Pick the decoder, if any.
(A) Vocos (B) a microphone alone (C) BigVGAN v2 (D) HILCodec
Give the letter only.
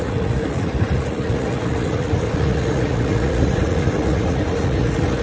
A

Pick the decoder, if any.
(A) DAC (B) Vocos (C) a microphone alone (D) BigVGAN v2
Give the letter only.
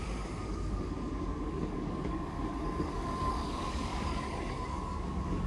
A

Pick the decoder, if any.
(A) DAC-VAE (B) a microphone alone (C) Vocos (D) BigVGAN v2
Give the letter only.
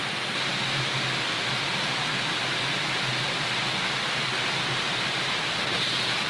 B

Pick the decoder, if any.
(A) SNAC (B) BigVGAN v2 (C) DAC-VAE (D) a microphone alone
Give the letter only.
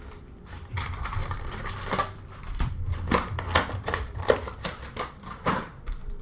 B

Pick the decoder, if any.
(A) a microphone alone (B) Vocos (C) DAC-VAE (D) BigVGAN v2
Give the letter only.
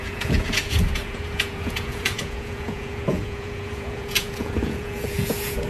B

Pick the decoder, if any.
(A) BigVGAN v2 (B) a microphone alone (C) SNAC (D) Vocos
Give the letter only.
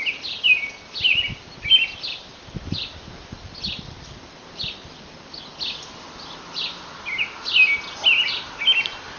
B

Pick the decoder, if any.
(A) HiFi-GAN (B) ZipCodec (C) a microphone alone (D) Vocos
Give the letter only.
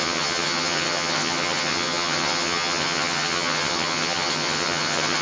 A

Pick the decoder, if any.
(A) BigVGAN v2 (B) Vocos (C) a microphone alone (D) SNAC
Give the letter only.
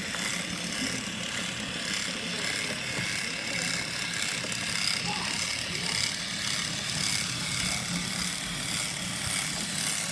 C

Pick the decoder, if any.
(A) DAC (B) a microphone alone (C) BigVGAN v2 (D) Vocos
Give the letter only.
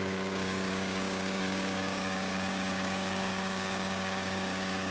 A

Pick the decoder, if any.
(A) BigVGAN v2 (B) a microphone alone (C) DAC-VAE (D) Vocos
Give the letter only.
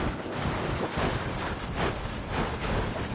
B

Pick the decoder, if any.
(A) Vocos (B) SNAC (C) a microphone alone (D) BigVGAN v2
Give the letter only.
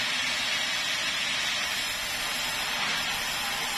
C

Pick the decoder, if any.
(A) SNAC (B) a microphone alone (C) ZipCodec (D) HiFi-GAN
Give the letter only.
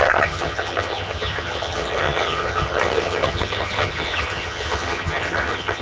D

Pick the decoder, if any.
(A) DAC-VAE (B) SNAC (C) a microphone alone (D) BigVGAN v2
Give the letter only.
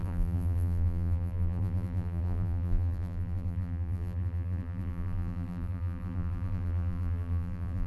D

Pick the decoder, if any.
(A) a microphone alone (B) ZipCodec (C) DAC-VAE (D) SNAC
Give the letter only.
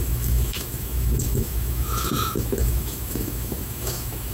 C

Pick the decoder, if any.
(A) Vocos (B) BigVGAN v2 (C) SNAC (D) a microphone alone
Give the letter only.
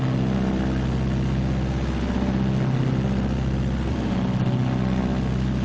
D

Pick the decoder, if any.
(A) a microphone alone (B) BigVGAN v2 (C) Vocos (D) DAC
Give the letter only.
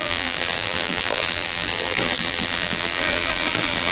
B